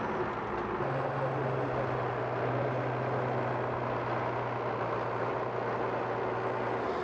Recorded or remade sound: recorded